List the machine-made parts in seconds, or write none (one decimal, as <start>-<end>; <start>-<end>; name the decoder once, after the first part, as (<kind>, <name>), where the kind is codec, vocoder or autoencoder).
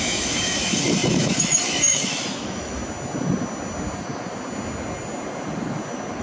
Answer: 0.0-2.8 (autoencoder, DAC-VAE)